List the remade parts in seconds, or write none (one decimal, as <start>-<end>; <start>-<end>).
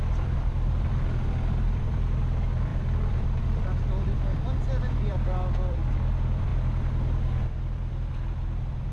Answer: 0.0-8.9